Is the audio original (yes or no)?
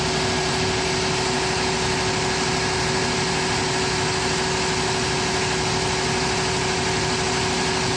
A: yes